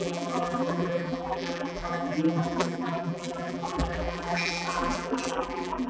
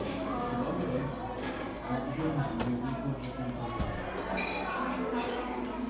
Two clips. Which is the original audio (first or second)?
second